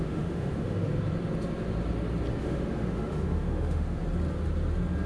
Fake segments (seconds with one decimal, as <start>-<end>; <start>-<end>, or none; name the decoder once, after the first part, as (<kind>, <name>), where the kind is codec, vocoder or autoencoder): 0.0-0.9 (autoencoder, DAC-VAE); 2.4-4.0

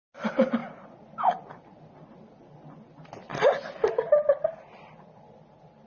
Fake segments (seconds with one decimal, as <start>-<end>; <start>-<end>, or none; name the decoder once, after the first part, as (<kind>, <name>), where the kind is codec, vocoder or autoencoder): none

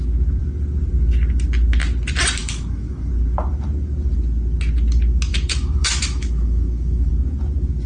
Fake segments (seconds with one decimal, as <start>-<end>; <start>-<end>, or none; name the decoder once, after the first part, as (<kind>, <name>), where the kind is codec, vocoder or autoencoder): 2.4-3.1 (autoencoder, DAC-VAE); 5.3-7.1